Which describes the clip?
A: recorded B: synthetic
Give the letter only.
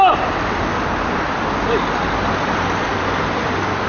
A